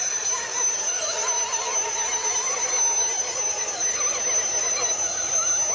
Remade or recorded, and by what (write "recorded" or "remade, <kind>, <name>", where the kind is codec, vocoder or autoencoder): recorded